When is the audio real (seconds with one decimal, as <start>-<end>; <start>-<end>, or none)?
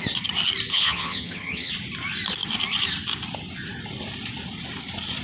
0.0-0.7; 1.7-5.2